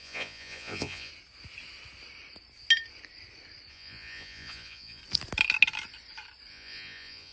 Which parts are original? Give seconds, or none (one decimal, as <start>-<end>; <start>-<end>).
1.1-3.7; 5.0-6.5